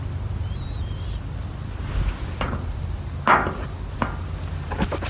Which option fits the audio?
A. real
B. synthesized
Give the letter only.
A